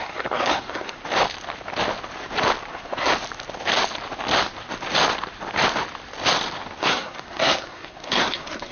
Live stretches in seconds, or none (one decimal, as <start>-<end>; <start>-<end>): 1.0-2.7; 3.1-6.8